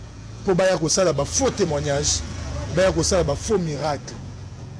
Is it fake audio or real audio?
fake